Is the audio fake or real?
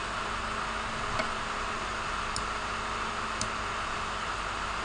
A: real